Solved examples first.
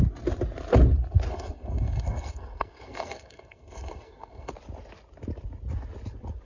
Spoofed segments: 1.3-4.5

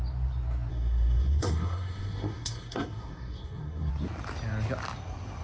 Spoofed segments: 0.7-3.9

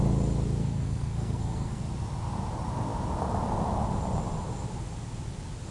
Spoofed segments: 0.6-1.8